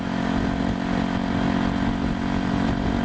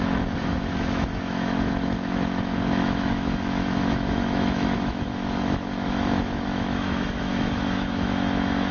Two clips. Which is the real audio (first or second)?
first